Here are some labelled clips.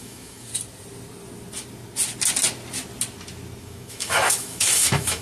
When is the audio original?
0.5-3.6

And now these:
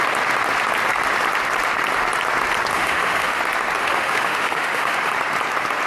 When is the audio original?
0.0-2.7; 3.4-3.8; 5.1-5.9

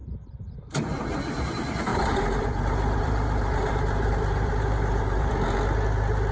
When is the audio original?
0.7-1.9; 5.3-6.3

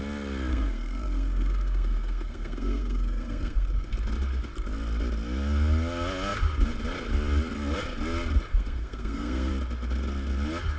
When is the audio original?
0.0-0.5; 3.7-8.5; 9.5-10.8

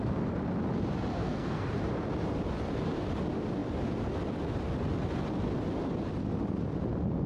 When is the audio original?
0.0-1.2; 1.7-7.3

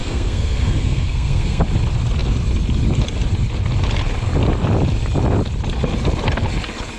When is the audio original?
1.6-7.0

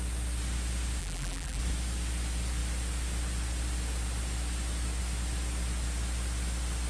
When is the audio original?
0.0-1.0; 1.6-6.9

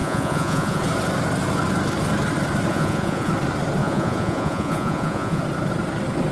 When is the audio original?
0.8-2.7; 3.3-3.8; 5.4-6.3